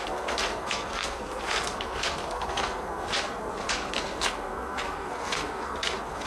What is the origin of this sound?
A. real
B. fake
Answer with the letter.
B